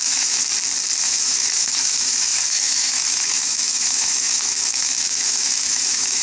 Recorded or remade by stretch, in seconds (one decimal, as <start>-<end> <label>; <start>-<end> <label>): 0.0-0.4 remade; 0.4-1.0 recorded; 1.0-6.2 remade